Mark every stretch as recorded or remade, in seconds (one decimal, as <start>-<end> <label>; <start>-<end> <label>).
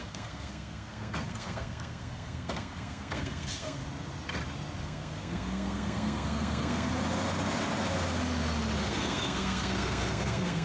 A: 0.0-3.8 remade; 3.8-4.8 recorded; 4.8-6.9 remade; 6.9-8.8 recorded; 8.8-10.6 remade